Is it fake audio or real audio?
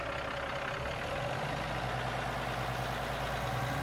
real